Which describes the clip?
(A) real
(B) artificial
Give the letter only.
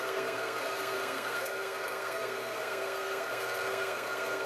B